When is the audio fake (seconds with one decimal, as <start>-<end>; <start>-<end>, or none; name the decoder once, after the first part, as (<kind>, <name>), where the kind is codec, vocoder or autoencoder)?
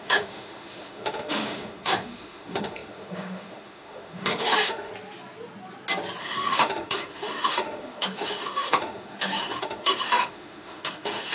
0.0-4.9 (autoencoder, DAC-VAE); 6.2-11.3